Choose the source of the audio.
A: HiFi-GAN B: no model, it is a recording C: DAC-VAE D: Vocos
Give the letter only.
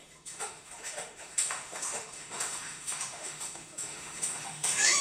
C